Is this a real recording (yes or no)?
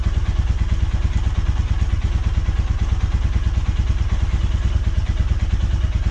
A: yes